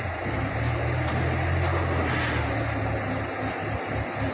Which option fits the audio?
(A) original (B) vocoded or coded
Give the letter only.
A